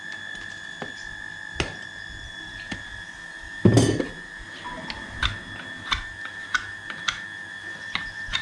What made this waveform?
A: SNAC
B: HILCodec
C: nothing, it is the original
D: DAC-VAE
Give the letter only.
C